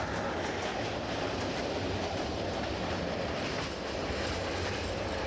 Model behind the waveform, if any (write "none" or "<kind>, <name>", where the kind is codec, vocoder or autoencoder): none